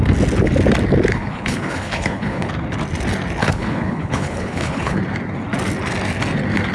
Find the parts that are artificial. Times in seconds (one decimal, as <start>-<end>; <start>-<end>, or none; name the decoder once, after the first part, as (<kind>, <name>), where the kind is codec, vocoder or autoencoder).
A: 1.1-2.5 (codec, HILCodec); 3.4-5.0